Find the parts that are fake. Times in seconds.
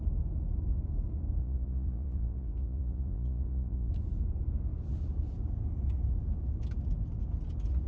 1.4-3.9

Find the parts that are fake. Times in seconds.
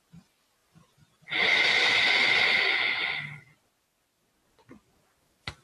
none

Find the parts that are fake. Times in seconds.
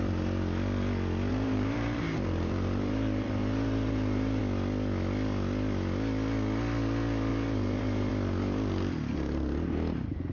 1.3-4.4; 7.3-8.1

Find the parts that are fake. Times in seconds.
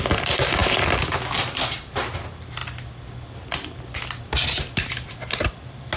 none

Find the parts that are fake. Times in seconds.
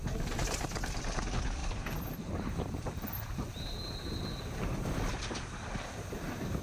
1.6-2.8